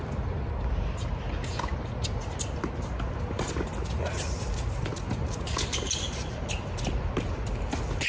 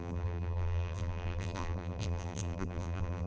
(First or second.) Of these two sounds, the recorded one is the first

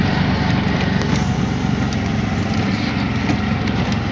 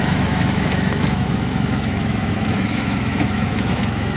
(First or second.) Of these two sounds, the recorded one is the first